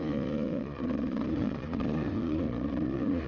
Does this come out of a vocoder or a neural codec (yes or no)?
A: yes